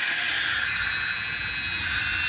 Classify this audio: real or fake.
real